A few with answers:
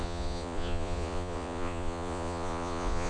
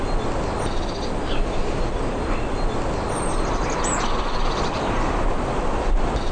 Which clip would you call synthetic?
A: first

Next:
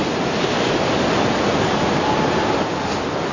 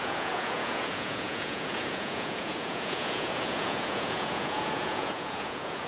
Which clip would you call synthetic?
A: second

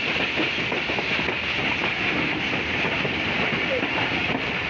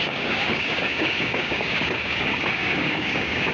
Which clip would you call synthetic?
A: second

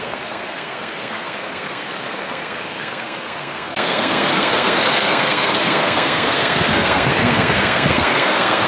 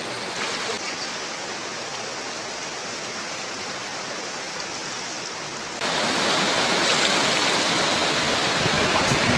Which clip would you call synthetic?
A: first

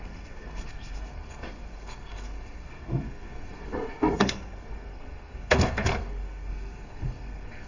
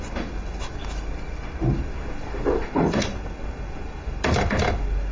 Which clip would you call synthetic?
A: first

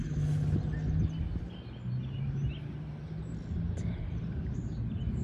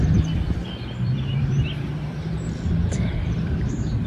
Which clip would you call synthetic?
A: second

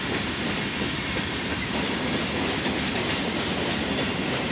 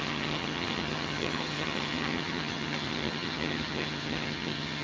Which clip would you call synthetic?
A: second